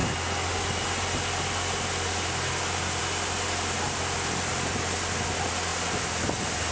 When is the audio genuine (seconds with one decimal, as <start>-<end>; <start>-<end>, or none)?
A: 0.0-6.7